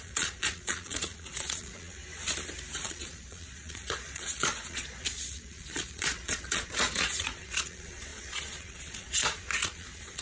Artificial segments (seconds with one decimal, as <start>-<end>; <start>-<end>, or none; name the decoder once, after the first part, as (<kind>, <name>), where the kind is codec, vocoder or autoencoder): 0.0-2.0 (vocoder, Vocos); 2.8-10.2